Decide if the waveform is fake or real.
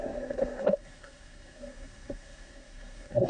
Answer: fake